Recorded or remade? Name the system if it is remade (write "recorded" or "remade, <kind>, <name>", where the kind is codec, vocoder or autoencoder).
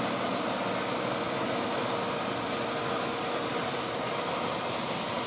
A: recorded